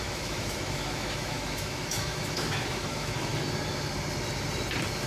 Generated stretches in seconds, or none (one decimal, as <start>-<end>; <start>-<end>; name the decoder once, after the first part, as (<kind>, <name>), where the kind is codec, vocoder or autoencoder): 0.0-3.3 (autoencoder, DAC-VAE)